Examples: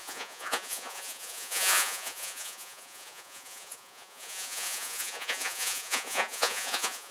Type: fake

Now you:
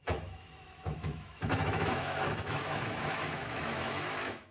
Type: fake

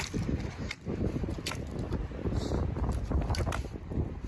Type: real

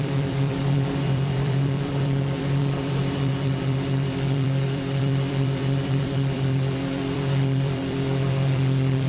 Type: fake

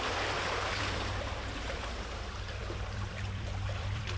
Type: fake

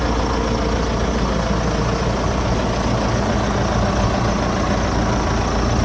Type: real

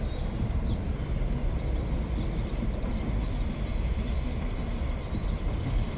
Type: fake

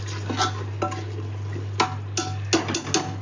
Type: real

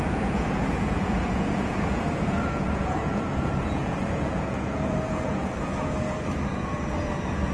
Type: fake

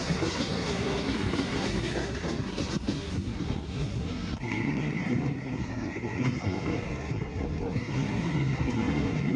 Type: fake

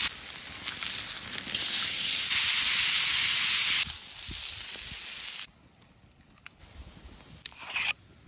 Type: real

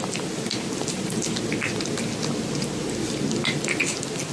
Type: real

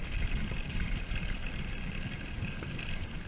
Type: real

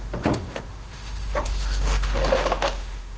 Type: fake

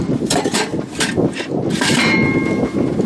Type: real